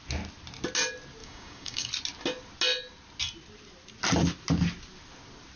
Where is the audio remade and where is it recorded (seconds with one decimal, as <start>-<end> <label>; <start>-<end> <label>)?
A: 0.0-1.2 recorded; 1.2-1.9 remade; 1.9-5.6 recorded